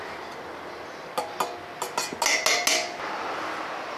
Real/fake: real